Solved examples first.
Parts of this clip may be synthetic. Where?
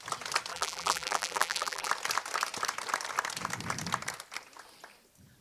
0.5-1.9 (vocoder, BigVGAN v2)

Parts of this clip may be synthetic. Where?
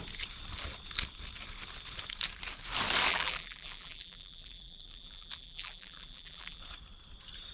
3.1-6.6 (vocoder, BigVGAN v2)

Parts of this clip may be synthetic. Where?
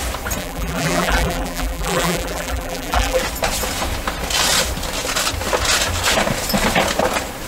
0.4-3.2 (vocoder, BigVGAN v2)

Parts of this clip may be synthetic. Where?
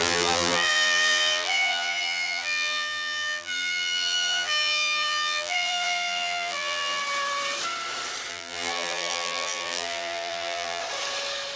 0.0-7.0 (vocoder, BigVGAN v2); 8.3-10.8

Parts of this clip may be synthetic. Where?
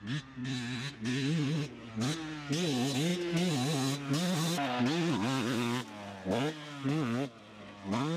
none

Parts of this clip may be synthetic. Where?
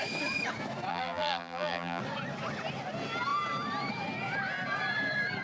0.9-2.0 (vocoder, BigVGAN v2)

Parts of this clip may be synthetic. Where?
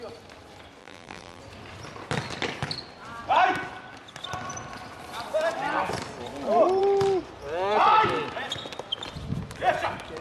0.8-1.4 (vocoder, BigVGAN v2)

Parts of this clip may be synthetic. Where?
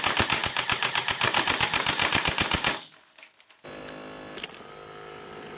none